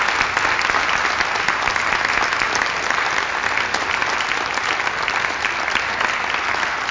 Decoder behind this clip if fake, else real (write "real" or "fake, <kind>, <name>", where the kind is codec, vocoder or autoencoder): real